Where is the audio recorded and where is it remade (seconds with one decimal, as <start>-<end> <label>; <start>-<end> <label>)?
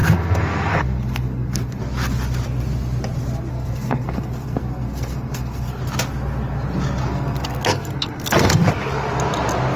0.0-1.8 remade; 1.8-3.5 recorded; 3.5-5.8 remade; 5.8-7.0 recorded; 7.0-8.7 remade; 8.7-9.8 recorded